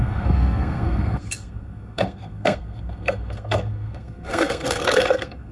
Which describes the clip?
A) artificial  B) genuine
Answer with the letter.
A